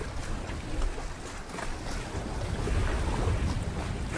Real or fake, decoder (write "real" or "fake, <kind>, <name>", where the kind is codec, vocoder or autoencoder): real